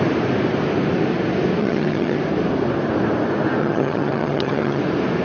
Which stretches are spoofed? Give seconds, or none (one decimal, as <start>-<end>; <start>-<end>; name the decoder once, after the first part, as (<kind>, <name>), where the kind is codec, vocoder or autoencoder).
1.6-2.2 (vocoder, HiFi-GAN); 3.6-4.8